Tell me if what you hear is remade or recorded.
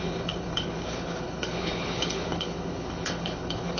remade